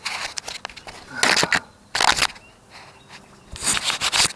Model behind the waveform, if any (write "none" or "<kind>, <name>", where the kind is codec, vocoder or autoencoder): none